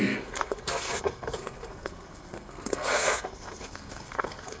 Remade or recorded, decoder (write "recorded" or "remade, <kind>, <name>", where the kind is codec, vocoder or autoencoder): remade, codec, SNAC